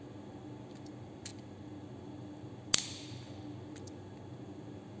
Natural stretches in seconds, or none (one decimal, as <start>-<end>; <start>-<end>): 0.0-5.0